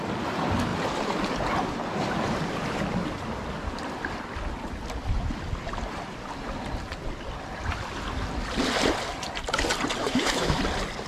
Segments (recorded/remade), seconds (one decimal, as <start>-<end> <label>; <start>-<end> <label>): 0.0-10.0 recorded; 10.0-10.6 remade; 10.6-11.1 recorded